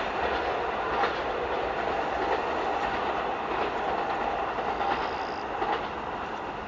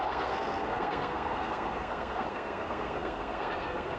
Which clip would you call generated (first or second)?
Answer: second